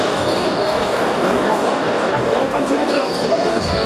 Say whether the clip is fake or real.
fake